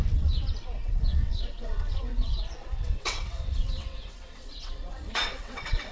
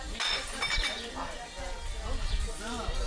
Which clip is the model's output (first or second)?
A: first